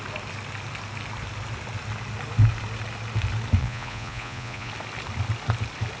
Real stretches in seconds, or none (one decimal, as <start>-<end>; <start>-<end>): 0.0-3.6; 4.7-6.0